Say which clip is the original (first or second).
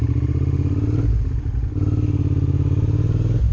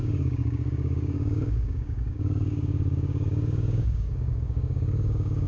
first